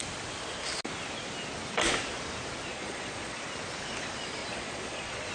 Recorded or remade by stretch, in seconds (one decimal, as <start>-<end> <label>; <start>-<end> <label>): 0.0-2.7 recorded; 2.7-3.4 remade; 3.4-4.4 recorded; 4.4-5.3 remade